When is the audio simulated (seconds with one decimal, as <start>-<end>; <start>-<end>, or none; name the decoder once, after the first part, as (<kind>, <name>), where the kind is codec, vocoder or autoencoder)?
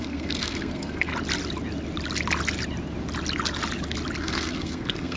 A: 0.0-1.1 (codec, SNAC); 4.2-5.2